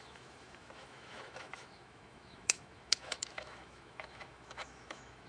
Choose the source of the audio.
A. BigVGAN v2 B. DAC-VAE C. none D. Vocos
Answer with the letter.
B